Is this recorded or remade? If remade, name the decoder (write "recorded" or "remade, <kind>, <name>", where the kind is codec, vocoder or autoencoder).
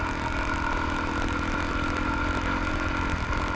recorded